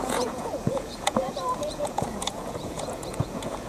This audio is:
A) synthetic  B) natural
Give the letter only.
A